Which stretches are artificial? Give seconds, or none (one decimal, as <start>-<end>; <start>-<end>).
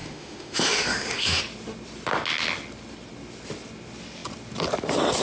0.0-1.4